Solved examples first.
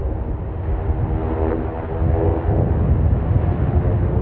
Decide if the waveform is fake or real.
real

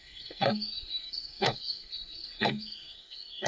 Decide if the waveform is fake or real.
fake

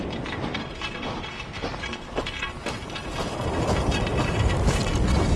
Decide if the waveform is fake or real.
real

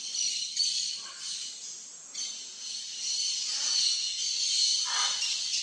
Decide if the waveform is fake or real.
real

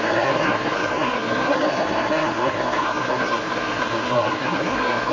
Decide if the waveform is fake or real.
fake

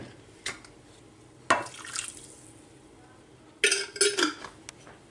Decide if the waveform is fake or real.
real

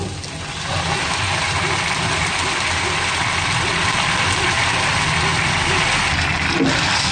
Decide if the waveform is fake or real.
real